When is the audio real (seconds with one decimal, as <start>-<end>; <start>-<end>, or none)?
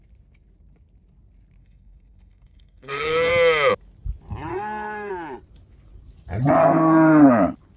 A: 0.0-1.6; 3.3-4.5; 5.1-6.6; 7.3-7.8